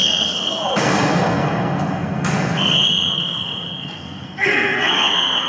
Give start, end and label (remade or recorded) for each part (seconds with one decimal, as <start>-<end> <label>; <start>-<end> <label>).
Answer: 0.0-5.5 remade